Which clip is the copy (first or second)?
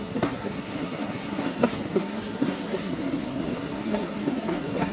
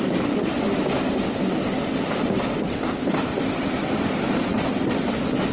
first